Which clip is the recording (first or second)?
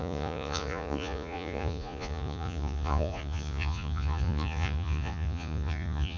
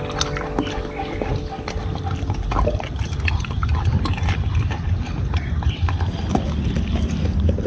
second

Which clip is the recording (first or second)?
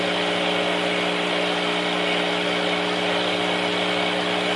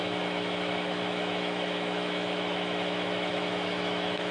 first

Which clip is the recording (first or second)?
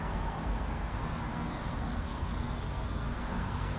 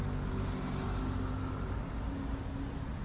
second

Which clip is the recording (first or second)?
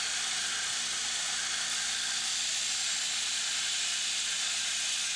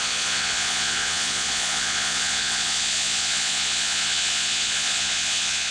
first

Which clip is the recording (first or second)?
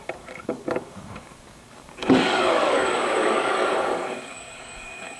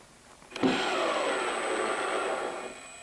second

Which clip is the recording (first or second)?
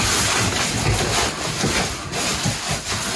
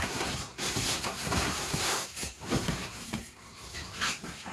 first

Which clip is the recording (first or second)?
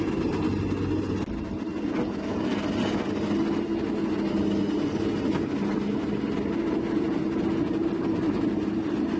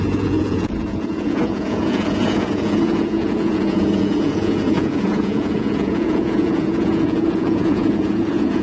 first